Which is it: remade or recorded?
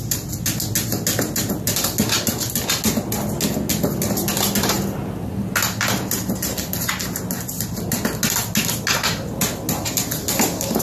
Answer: recorded